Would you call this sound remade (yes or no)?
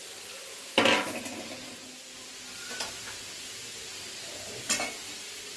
no